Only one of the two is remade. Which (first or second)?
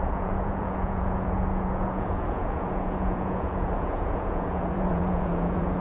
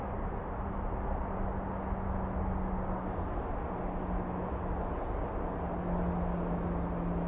first